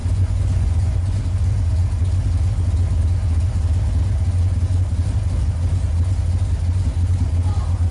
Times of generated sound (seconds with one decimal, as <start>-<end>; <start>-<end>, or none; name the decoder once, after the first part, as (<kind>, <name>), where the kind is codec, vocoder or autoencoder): 0.0-1.2 (vocoder, Vocos)

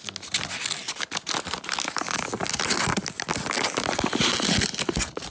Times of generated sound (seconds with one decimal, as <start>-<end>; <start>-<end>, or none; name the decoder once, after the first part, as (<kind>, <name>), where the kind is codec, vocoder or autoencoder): none

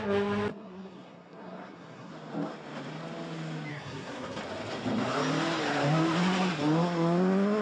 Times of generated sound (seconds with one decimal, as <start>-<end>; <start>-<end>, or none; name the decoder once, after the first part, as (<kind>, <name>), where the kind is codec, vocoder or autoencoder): 0.5-2.1 (codec, SNAC); 3.7-4.4

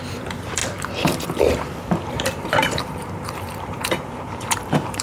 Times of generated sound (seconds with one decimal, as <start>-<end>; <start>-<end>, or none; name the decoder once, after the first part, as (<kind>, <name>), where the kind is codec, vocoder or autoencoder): 0.0-0.6 (vocoder, BigVGAN v2); 1.5-5.0

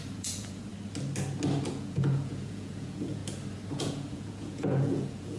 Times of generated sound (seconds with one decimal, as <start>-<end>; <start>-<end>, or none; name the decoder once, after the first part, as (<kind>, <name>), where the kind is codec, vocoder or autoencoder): 0.0-0.7 (vocoder, Vocos); 1.7-3.2; 3.7-5.4